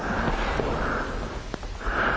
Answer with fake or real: real